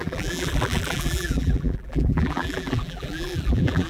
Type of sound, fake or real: fake